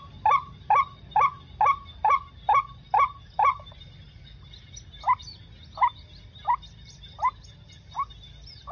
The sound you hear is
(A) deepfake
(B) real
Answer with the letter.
B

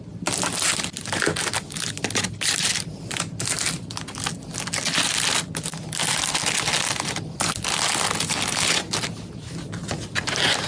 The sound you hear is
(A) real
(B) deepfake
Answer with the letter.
A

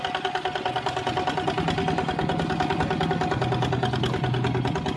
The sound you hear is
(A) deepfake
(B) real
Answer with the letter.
B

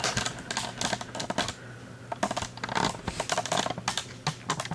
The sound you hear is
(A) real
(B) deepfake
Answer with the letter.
A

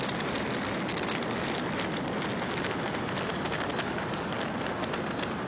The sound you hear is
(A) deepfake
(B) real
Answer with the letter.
B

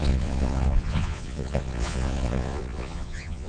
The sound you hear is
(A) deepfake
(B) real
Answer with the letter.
A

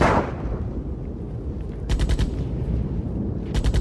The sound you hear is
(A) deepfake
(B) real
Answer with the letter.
B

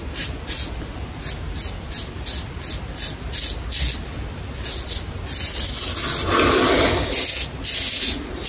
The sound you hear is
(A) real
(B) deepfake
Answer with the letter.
A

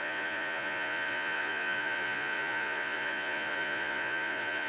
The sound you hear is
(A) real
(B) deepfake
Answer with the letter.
B